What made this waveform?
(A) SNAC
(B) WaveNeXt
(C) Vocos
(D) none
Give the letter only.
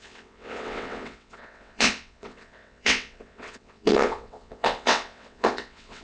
B